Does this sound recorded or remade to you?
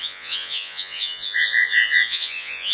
remade